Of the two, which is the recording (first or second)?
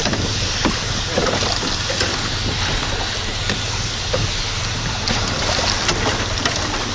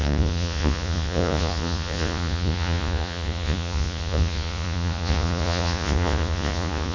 first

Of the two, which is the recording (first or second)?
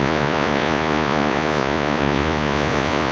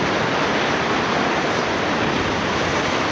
second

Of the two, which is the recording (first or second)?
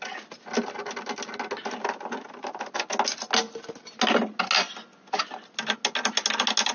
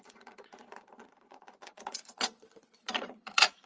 first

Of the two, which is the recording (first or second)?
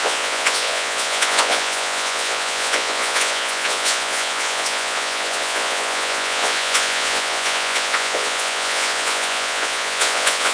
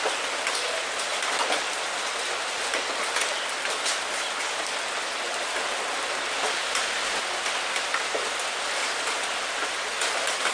second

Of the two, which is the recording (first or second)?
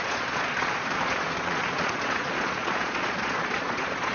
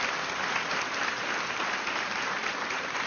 second